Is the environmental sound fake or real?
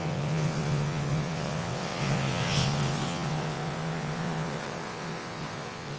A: fake